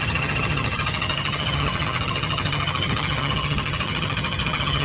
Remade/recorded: remade